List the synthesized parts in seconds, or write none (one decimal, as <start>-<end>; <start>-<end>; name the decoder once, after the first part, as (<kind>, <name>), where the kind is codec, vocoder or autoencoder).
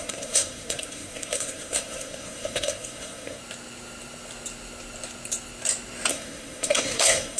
0.0-3.4 (codec, SNAC); 6.1-7.4